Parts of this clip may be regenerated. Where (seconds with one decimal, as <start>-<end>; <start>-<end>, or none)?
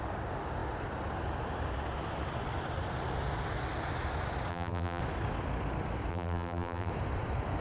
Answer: 4.5-5.0; 6.1-6.9